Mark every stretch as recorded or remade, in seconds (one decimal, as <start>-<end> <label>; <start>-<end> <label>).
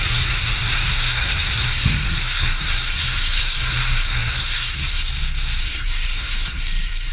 0.0-5.1 remade; 5.1-5.6 recorded; 5.6-7.1 remade